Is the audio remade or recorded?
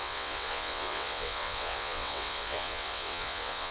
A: remade